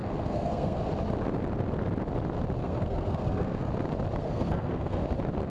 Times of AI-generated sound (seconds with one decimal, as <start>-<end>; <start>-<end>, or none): 0.0-0.8; 2.6-3.7; 4.2-5.0